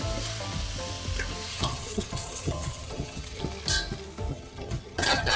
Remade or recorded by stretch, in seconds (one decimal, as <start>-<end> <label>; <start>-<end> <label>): 0.0-1.5 recorded; 1.5-3.4 remade; 3.4-4.3 recorded; 4.3-5.4 remade